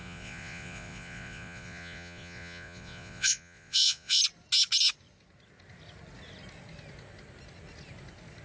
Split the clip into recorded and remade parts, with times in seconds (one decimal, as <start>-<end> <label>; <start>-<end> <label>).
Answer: 0.0-4.2 remade; 4.2-8.4 recorded